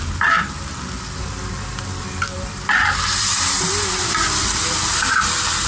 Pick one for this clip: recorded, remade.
remade